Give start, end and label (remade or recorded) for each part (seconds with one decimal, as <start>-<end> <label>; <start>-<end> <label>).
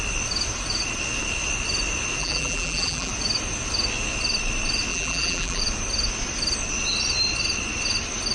0.0-2.2 recorded; 2.2-3.1 remade; 3.1-4.9 recorded; 4.9-5.6 remade; 5.6-8.3 recorded